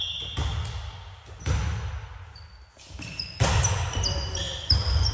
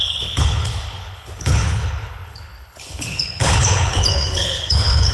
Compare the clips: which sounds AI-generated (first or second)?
second